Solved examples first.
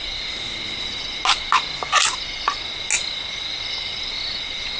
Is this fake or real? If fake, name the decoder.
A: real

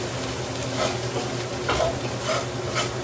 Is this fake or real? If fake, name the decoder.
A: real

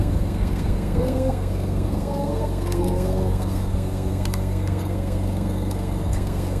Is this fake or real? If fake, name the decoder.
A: fake, codec, SNAC